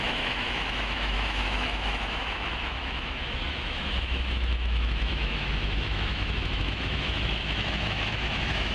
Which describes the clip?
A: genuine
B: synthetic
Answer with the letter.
B